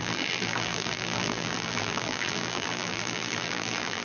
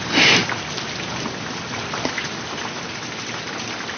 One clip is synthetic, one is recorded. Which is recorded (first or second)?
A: second